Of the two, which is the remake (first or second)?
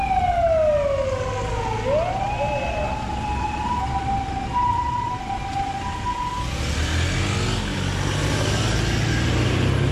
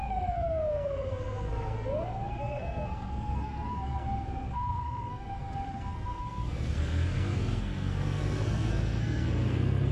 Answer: second